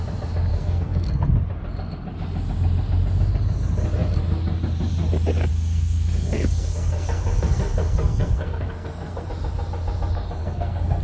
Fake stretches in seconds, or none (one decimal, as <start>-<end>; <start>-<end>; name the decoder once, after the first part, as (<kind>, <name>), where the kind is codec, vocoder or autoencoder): 0.5-1.1 (codec, SNAC); 5.5-9.3; 10.4-11.0